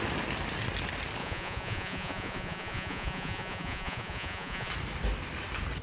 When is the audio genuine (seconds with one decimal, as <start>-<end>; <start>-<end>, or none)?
0.0-1.2; 4.7-5.8